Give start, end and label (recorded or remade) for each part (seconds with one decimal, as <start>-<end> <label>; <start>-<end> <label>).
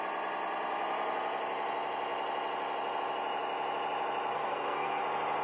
0.0-4.3 recorded; 4.3-5.0 remade; 5.0-5.4 recorded